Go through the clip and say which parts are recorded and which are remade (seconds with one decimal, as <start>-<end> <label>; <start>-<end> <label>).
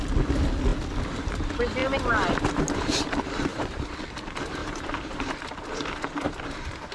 0.0-3.5 recorded; 3.5-4.0 remade; 4.0-4.6 recorded; 4.6-5.4 remade; 5.4-6.9 recorded